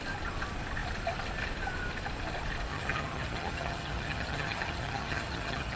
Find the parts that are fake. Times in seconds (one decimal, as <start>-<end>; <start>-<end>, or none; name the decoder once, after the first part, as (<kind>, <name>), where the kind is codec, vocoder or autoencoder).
2.7-5.8 (vocoder, HiFi-GAN)